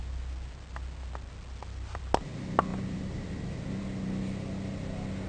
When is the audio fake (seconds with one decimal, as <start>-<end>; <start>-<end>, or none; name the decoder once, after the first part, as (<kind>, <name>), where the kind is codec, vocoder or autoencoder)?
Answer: none